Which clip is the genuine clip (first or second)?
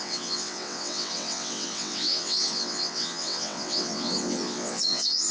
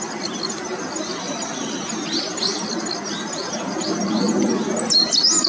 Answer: second